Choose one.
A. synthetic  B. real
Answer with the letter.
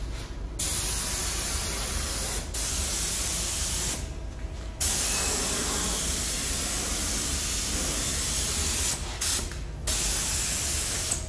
B